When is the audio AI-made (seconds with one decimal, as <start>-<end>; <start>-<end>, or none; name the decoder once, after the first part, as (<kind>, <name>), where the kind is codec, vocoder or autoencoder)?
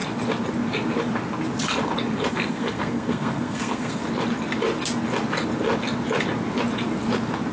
2.3-4.0 (codec, SNAC)